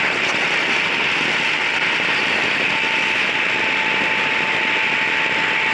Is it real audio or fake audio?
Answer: real